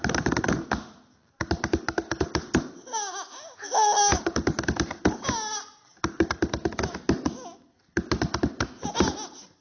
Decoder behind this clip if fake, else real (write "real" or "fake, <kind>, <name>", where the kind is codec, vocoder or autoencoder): real